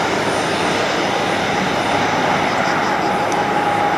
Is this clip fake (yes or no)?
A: no